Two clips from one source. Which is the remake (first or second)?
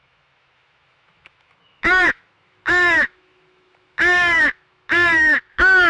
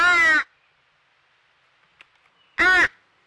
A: first